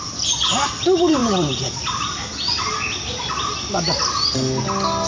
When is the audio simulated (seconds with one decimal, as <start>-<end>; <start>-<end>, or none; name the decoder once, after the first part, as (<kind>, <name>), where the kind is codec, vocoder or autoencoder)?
none